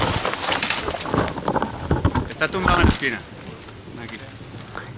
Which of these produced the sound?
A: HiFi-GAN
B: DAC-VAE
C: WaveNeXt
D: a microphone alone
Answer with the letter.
D